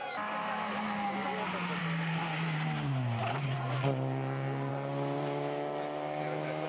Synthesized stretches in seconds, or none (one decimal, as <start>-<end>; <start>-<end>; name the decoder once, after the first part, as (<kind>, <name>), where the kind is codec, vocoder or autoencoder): none